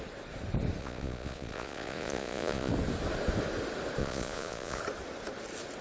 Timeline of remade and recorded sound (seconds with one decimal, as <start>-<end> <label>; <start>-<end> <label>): 0.0-0.8 recorded; 0.8-2.7 remade; 2.7-4.0 recorded; 4.0-4.8 remade; 4.8-5.8 recorded